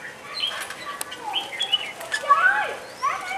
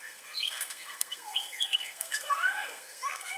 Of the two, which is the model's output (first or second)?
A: second